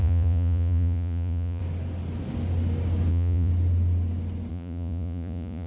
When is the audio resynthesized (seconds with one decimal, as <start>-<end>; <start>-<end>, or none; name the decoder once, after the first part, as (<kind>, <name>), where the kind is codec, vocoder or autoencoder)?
0.0-1.6 (vocoder, Vocos); 3.1-3.5; 4.5-5.7